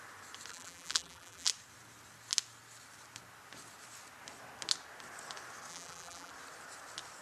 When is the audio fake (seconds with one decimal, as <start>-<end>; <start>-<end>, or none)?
0.5-1.5; 5.7-6.3